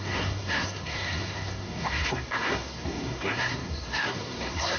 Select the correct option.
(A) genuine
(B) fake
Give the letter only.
B